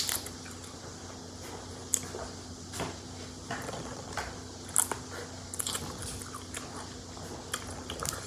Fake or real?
real